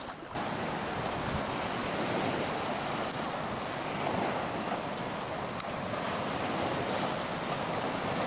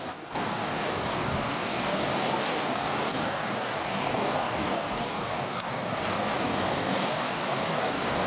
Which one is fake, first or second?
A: second